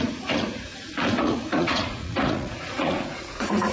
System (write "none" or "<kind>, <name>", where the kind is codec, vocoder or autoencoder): vocoder, Vocos